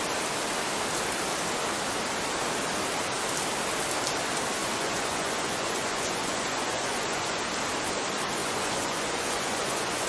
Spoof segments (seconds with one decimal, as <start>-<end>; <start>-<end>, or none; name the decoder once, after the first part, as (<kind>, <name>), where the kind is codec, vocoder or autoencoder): 4.6-7.4 (vocoder, Vocos); 8.4-10.1